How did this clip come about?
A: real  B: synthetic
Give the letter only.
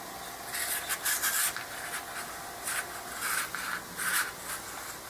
A